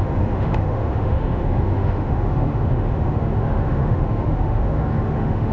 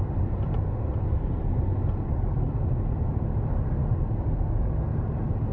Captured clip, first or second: second